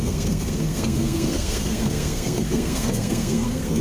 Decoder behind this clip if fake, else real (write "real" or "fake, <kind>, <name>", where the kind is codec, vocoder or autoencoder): fake, codec, SNAC